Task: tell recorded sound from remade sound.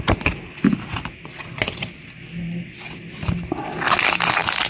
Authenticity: recorded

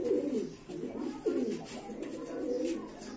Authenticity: recorded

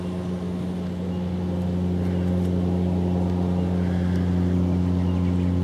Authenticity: recorded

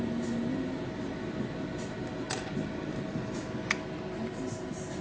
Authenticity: recorded